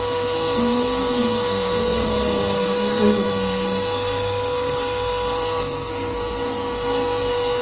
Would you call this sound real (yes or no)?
no